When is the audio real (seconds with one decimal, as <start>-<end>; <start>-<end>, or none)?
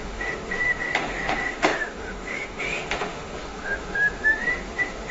none